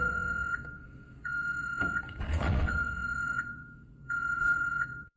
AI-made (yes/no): yes